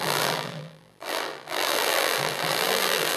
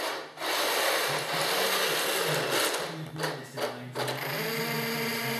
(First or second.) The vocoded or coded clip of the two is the first